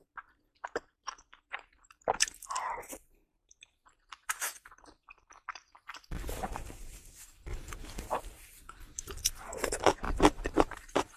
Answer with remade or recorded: remade